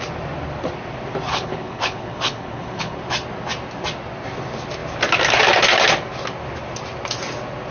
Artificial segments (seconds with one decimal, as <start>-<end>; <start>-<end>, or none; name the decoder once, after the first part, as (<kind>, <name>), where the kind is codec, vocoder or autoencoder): 1.3-3.0 (codec, HILCodec)